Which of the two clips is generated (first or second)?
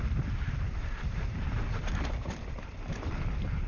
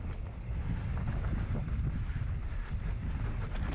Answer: first